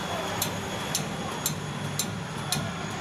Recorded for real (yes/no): yes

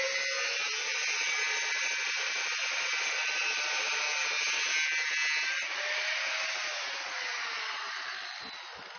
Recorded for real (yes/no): yes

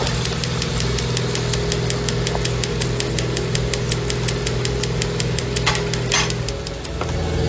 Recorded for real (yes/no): yes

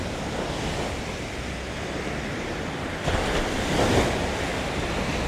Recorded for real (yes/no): yes